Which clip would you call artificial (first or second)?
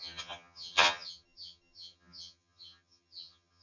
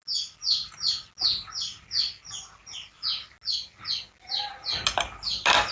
first